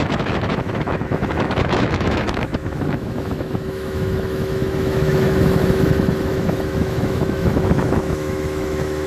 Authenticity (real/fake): fake